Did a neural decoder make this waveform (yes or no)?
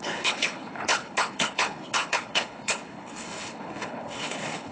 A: yes